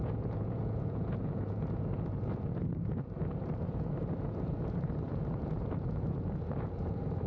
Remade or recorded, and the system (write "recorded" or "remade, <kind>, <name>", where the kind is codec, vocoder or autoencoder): remade, vocoder, Vocos